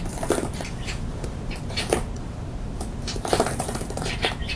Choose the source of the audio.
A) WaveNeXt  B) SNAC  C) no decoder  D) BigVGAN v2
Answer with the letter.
D